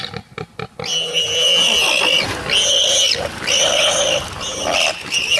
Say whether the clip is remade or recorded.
recorded